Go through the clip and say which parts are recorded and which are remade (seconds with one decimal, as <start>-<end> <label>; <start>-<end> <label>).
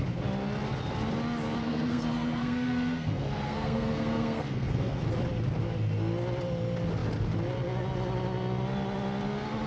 0.0-1.6 recorded; 1.6-5.0 remade; 5.0-9.7 recorded